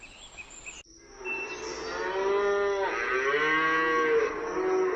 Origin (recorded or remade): recorded